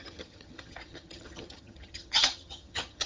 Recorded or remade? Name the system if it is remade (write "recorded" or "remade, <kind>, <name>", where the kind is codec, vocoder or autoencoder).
remade, vocoder, HiFi-GAN